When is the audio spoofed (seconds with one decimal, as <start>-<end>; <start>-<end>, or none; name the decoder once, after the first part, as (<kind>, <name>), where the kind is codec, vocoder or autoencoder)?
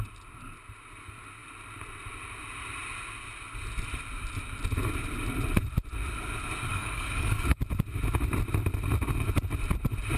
6.7-7.6 (codec, DAC)